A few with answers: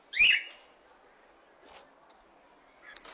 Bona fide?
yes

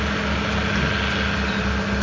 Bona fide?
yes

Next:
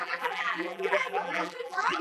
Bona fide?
no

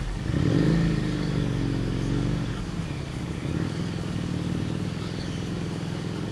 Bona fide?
no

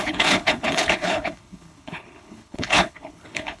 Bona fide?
no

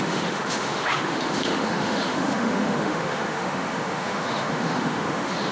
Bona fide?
no